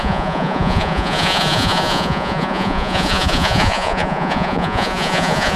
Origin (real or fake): fake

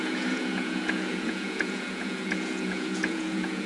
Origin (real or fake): fake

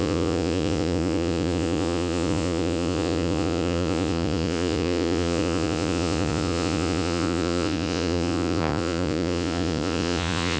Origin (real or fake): fake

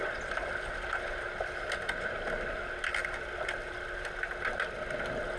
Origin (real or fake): real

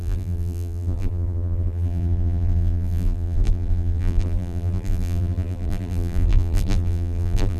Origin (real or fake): fake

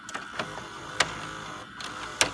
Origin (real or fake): real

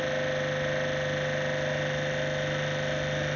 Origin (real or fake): real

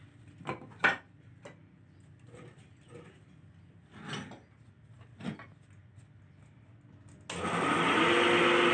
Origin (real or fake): real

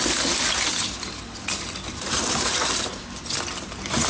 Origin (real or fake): real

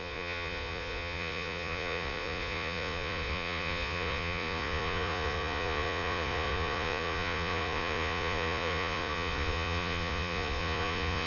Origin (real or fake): fake